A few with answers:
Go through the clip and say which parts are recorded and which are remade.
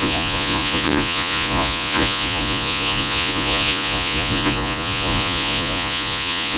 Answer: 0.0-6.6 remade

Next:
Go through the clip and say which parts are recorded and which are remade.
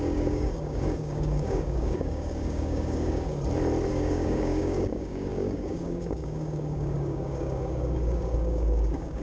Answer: 0.0-3.3 remade; 3.3-3.9 recorded; 3.9-9.2 remade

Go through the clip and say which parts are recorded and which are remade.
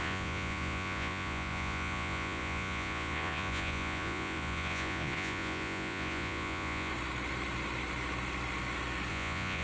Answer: 0.0-6.9 remade; 6.9-9.1 recorded; 9.1-9.6 remade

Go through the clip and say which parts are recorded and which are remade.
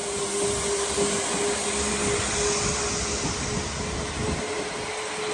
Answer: 0.0-5.3 recorded